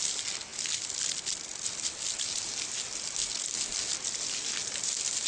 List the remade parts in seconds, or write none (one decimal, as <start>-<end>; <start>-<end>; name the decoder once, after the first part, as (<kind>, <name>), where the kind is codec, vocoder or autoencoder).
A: none